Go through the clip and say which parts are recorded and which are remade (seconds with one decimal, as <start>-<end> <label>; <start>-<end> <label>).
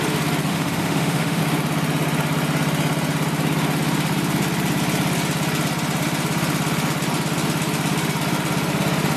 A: 0.0-0.5 recorded; 0.5-1.4 remade; 1.4-9.2 recorded